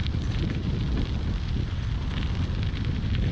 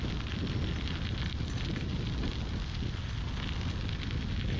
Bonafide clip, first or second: second